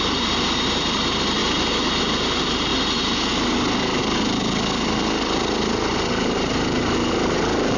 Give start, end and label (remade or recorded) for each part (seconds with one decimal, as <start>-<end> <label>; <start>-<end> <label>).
0.0-1.4 remade; 1.4-2.0 recorded; 2.0-2.7 remade; 2.7-4.0 recorded; 4.0-4.4 remade; 4.4-5.9 recorded; 5.9-7.8 remade